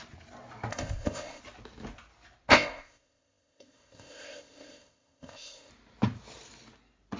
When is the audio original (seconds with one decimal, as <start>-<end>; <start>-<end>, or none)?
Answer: 0.0-0.7; 1.4-2.5; 5.7-7.2